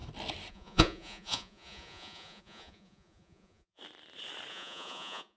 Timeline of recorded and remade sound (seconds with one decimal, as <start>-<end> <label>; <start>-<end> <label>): 0.0-0.5 recorded; 0.5-3.8 remade; 3.8-4.5 recorded; 4.5-5.4 remade